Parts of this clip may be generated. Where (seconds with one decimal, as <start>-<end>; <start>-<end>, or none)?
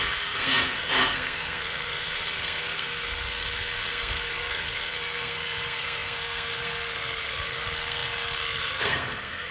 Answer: 0.0-9.5